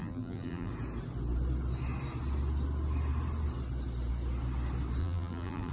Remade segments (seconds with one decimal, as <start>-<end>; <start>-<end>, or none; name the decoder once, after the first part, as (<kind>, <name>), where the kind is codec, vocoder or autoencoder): 0.0-0.7 (vocoder, BigVGAN v2); 5.0-5.7